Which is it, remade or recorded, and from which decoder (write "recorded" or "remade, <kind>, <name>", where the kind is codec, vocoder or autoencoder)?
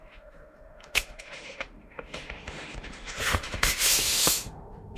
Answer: remade, autoencoder, DAC-VAE